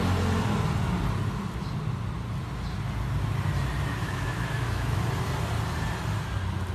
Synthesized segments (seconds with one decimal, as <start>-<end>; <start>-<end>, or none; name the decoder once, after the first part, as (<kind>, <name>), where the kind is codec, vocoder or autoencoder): 4.0-5.0 (autoencoder, DAC-VAE)